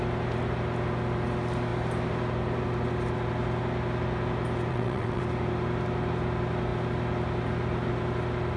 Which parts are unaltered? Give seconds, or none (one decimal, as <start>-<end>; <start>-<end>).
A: 0.0-4.7; 5.2-8.6